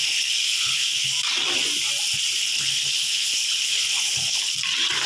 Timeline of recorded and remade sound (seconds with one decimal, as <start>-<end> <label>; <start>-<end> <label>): 0.0-1.1 remade; 1.1-2.4 recorded; 2.4-4.5 remade; 4.5-5.1 recorded

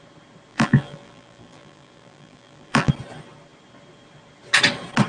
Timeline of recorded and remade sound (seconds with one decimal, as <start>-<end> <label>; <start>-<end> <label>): 0.0-0.5 recorded; 0.5-2.9 remade; 2.9-5.1 recorded

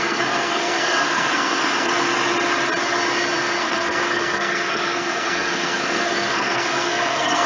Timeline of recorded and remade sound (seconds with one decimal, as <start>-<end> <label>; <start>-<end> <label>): 0.0-2.1 remade; 2.1-3.6 recorded; 3.6-7.5 remade

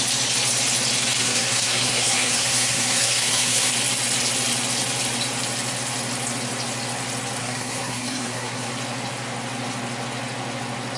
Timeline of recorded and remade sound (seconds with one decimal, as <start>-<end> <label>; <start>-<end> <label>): 0.0-1.2 recorded; 1.2-3.7 remade; 3.7-7.4 recorded; 7.4-8.7 remade; 8.7-11.0 recorded

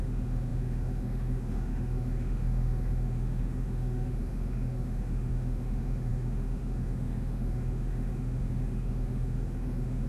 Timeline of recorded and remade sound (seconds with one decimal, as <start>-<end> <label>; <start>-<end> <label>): 0.0-10.1 remade

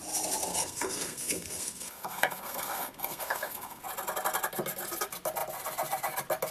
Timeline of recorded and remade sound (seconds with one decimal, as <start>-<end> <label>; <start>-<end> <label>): 0.0-0.5 recorded; 0.5-3.8 remade; 3.8-6.5 recorded